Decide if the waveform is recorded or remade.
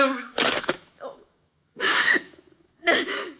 remade